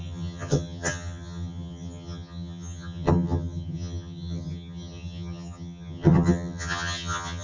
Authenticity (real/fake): fake